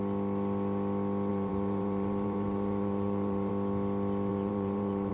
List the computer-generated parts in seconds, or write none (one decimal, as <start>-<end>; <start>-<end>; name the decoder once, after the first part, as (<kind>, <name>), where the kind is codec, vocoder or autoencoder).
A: 1.3-3.5 (vocoder, BigVGAN v2); 4.3-5.1